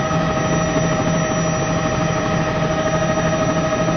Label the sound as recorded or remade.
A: recorded